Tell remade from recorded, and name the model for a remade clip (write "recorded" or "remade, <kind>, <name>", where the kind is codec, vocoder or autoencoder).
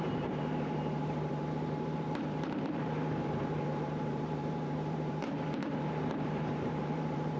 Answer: remade, vocoder, BigVGAN v2